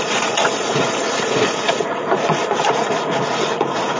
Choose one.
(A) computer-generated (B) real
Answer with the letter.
A